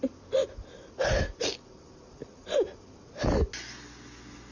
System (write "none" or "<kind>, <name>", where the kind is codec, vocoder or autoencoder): none